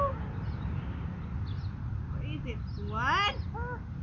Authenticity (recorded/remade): recorded